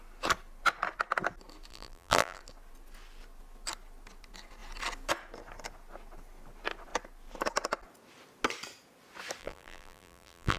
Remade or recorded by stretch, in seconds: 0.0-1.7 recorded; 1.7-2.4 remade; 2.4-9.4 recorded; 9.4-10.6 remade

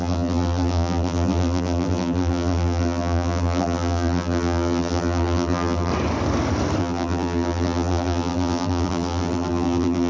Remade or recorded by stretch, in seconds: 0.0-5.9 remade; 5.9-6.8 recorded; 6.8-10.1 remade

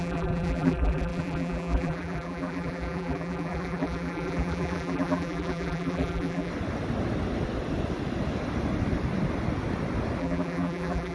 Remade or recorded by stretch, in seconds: 0.0-6.5 remade; 6.5-10.2 recorded; 10.2-11.1 remade

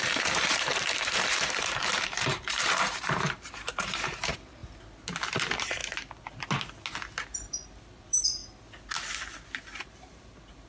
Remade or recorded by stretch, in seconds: 0.0-4.6 remade; 4.6-5.3 recorded; 5.3-5.8 remade; 5.8-7.8 recorded; 7.8-8.4 remade; 8.4-9.8 recorded; 9.8-10.7 remade